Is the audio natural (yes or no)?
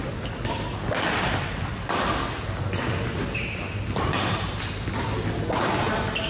yes